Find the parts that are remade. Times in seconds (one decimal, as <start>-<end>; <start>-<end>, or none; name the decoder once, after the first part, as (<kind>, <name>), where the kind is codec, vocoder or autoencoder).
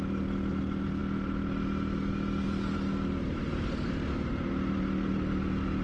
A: none